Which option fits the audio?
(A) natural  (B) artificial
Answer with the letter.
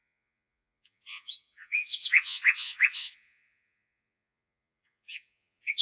B